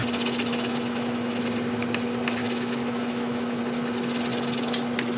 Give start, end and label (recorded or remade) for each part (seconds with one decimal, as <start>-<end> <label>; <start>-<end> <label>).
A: 0.0-0.5 recorded; 0.5-1.4 remade; 1.4-2.4 recorded; 2.4-3.6 remade; 3.6-5.2 recorded